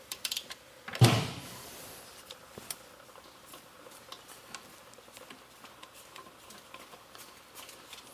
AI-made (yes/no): no